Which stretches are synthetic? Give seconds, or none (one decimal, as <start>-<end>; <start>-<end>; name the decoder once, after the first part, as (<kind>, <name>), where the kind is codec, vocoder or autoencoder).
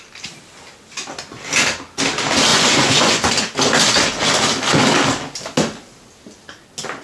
2.5-3.3 (vocoder, Vocos)